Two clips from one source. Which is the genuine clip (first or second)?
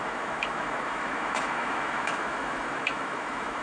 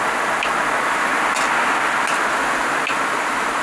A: second